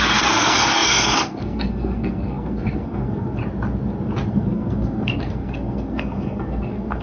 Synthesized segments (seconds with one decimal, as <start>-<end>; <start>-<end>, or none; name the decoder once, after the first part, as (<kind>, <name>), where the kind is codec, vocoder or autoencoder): 0.0-3.4 (codec, SNAC); 4.3-7.0